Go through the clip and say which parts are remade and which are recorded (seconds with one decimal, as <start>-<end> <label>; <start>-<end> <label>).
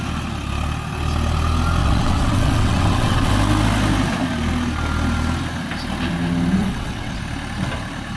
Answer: 0.0-1.8 recorded; 1.8-3.3 remade; 3.3-6.6 recorded; 6.6-7.2 remade; 7.2-8.2 recorded